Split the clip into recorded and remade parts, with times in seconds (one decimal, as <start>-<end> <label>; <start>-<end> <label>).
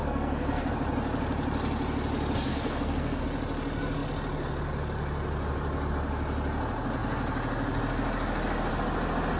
0.0-0.7 remade; 0.7-2.5 recorded; 2.5-3.2 remade; 3.2-9.4 recorded